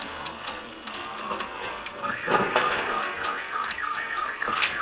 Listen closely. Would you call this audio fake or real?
fake